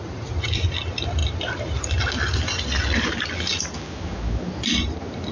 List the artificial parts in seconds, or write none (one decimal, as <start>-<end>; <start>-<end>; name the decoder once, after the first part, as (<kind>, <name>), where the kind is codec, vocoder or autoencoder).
none